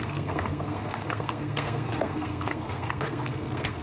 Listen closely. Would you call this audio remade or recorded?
remade